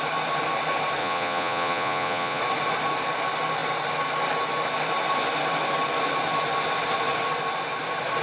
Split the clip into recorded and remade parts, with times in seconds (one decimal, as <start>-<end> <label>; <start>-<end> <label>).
0.0-1.0 recorded; 1.0-2.4 remade; 2.4-8.2 recorded